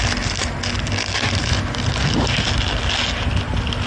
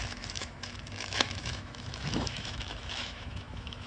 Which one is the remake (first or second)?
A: second